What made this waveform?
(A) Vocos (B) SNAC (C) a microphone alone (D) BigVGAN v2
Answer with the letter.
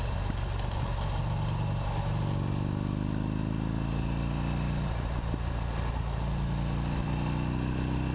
C